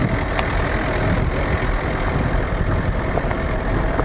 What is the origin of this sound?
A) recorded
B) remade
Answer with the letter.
A